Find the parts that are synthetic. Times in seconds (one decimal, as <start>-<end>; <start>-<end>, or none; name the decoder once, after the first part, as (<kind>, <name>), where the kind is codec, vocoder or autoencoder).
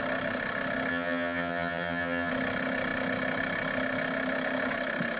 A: 0.9-2.3 (vocoder, HiFi-GAN)